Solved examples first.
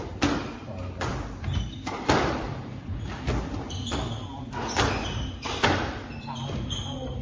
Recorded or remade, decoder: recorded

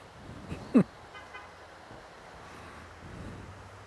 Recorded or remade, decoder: recorded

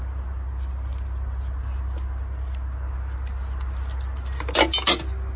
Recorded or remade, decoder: recorded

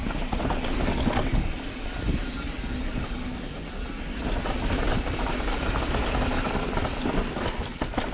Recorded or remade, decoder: recorded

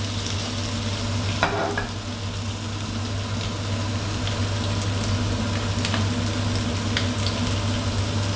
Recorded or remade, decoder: recorded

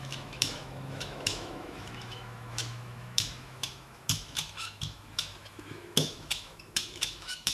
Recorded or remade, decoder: remade, autoencoder, DAC-VAE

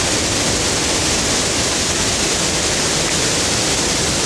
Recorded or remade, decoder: recorded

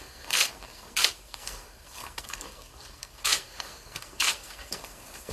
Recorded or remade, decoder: remade, codec, SNAC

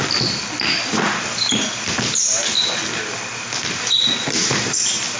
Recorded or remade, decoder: recorded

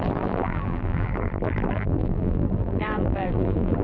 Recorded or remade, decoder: remade, vocoder, BigVGAN v2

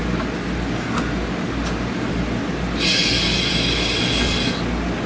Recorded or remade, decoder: recorded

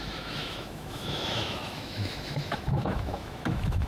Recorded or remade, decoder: remade, autoencoder, DAC-VAE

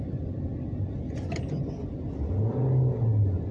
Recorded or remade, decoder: recorded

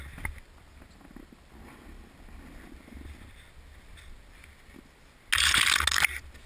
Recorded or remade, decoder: recorded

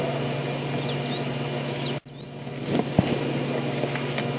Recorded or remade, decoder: recorded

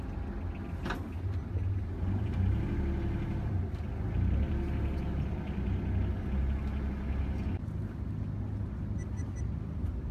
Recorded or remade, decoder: recorded